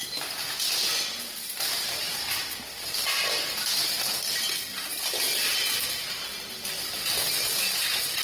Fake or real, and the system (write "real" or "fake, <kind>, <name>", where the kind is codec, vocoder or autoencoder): real